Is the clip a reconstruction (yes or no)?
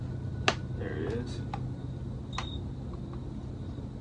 no